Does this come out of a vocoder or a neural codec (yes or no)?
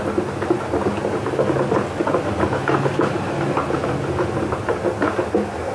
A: no